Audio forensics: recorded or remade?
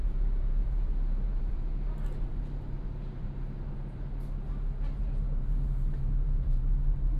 remade